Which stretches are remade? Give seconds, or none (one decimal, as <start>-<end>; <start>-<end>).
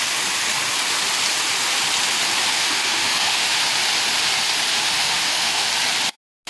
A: 2.5-3.6; 4.7-5.7